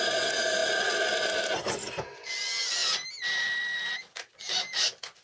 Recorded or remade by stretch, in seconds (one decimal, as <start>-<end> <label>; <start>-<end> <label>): 0.0-5.2 recorded